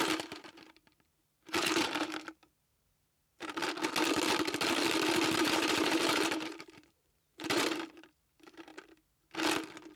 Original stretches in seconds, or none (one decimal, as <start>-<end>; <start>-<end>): 3.6-5.4; 8.7-10.0